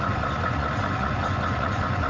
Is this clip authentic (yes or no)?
no